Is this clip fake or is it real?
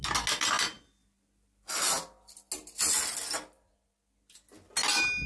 real